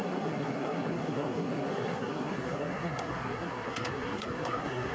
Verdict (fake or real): fake